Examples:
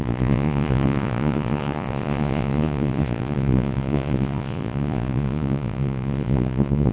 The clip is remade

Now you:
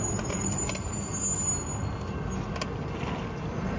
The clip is recorded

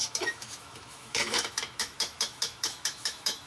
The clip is remade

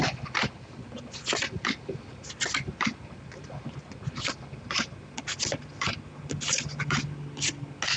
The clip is recorded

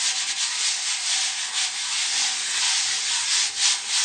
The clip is recorded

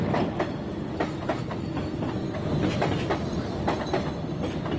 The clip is recorded